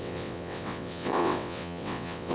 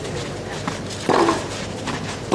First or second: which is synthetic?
first